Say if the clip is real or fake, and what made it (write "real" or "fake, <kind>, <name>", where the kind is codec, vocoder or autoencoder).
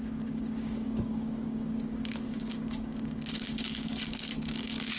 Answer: fake, codec, DAC